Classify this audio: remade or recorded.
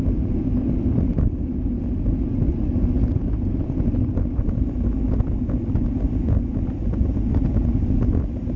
recorded